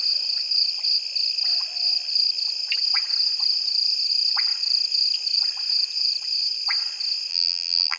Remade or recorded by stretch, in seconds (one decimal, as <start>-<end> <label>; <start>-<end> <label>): 0.0-7.3 recorded; 7.3-8.0 remade